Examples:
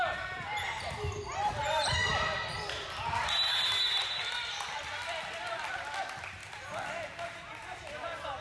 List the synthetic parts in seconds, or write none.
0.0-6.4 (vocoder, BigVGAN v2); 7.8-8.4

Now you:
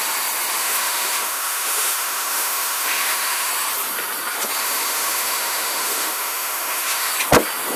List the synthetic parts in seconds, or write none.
0.6-3.5 (autoencoder, DAC-VAE); 4.6-7.1

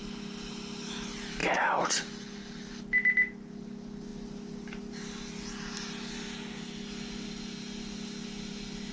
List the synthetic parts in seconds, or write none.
none

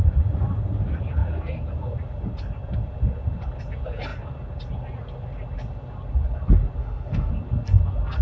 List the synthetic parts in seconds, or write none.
6.8-7.3 (autoencoder, DAC-VAE)

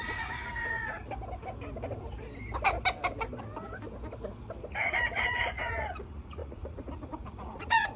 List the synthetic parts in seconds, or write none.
0.0-1.0 (vocoder, Vocos); 4.7-8.0

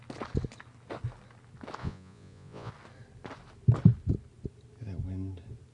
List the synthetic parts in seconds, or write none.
1.8-2.7 (vocoder, Vocos)